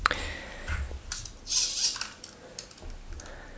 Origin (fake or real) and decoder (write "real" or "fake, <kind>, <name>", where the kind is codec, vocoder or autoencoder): real